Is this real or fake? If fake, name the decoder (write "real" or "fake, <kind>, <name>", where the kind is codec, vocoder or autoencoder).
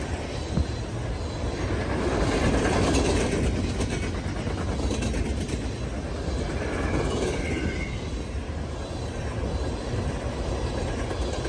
real